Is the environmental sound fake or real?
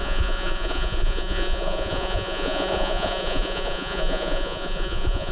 fake